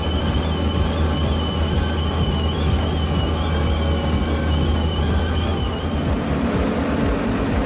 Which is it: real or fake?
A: real